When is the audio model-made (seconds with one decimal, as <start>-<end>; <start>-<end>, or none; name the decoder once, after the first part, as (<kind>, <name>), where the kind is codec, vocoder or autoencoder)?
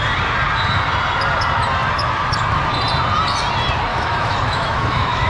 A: 3.9-5.3 (autoencoder, DAC-VAE)